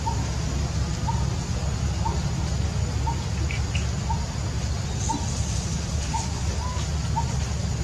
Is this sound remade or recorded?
recorded